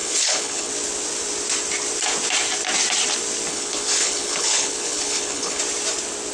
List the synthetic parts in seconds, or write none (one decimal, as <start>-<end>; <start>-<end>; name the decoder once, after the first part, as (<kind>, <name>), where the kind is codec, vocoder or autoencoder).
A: 0.0-0.7 (codec, HILCodec); 3.5-5.6